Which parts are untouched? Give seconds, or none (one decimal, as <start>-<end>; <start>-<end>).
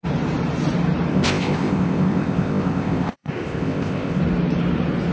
0.0-1.1; 4.2-5.1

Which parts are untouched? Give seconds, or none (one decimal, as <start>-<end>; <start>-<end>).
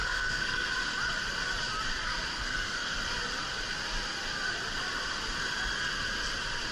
0.7-2.3; 3.0-6.7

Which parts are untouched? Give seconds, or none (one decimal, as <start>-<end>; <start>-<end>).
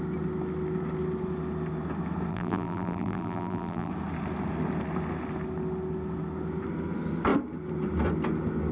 0.0-2.3; 3.9-8.7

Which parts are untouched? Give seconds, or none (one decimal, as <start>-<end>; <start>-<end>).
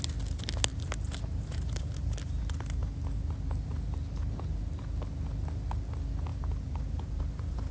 0.0-0.7; 2.4-6.3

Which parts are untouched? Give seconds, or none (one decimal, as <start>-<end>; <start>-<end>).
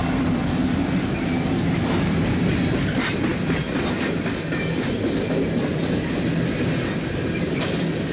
0.0-8.1